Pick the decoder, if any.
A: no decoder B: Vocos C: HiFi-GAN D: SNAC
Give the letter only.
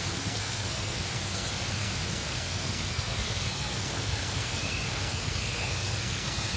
D